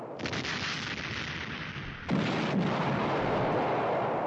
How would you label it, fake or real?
real